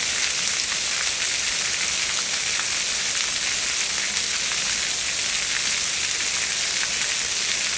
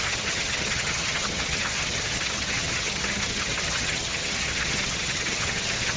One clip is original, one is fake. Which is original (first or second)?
first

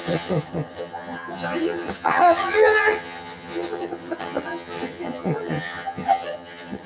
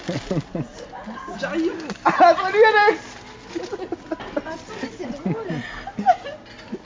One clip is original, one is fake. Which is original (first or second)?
second